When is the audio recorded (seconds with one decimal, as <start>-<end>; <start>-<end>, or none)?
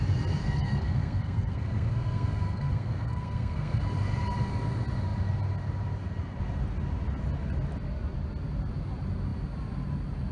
0.0-0.4; 3.8-10.3